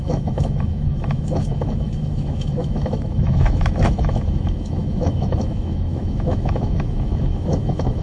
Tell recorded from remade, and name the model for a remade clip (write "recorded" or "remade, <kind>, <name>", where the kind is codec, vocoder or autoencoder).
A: remade, autoencoder, DAC-VAE